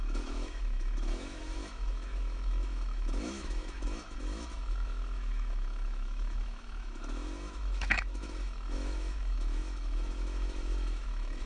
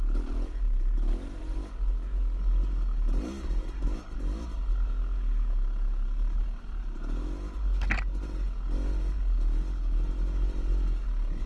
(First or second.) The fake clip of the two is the first